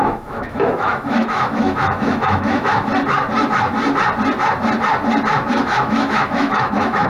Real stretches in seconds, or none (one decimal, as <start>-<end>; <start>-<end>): 2.9-5.5